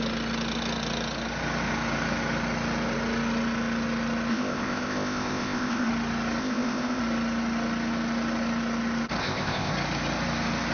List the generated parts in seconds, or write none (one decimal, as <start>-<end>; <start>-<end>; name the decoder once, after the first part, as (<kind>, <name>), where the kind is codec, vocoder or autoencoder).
4.3-5.9 (codec, ZipCodec); 6.4-7.0; 9.2-9.7